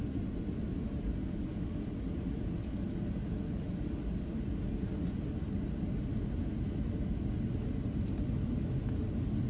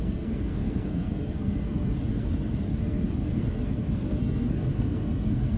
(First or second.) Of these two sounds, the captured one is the first